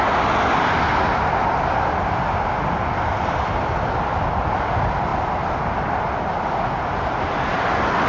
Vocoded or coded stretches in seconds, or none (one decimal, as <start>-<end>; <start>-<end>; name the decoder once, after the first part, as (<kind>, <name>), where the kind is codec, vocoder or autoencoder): none